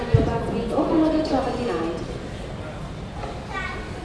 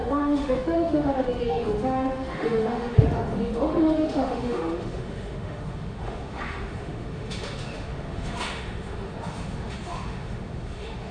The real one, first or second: first